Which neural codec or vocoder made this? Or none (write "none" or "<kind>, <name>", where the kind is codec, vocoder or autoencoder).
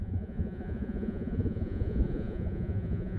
vocoder, Vocos